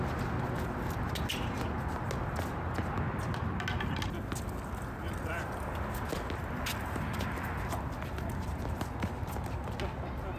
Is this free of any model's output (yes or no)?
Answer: yes